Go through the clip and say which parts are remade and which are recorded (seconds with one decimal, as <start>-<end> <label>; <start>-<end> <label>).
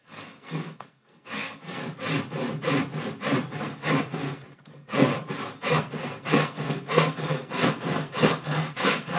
0.0-1.8 remade; 1.8-3.6 recorded; 3.6-5.1 remade; 5.1-5.7 recorded; 5.7-9.2 remade